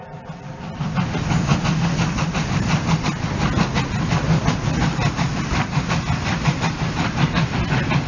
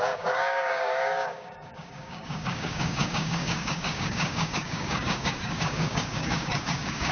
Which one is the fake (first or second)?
second